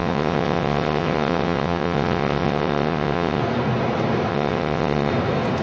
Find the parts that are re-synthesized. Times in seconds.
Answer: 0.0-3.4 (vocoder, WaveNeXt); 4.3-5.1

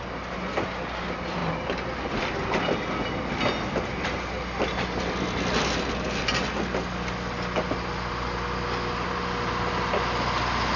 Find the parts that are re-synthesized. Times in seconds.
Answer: none

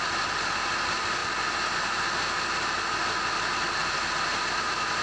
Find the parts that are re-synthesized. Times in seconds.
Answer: none

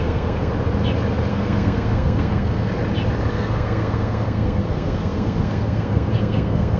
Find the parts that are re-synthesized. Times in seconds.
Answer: 0.0-0.5 (codec, SNAC); 1.3-2.7; 3.3-6.8

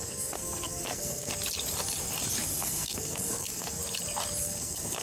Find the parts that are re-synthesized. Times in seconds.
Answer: 0.0-1.3 (codec, SNAC); 2.6-3.8; 4.4-5.0

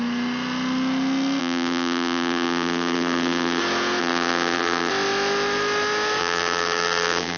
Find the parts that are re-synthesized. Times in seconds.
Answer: 1.4-3.6 (vocoder, BigVGAN v2); 4.0-4.9; 6.2-7.4

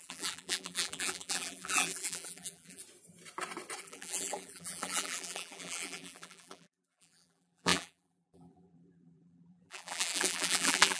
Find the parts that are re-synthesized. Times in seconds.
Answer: 0.0-2.8 (vocoder, BigVGAN v2); 3.8-11.0

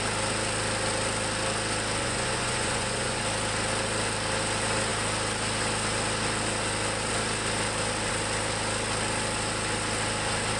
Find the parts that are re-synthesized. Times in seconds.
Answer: 2.0-3.2 (vocoder, Vocos)